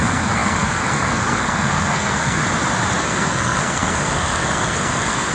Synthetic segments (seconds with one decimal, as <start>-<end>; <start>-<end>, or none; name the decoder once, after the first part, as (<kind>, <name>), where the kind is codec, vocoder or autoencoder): 0.0-2.4 (codec, SNAC); 3.0-5.3